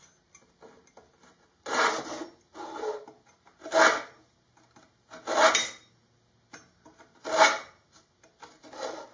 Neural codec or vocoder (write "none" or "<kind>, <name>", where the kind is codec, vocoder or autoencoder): none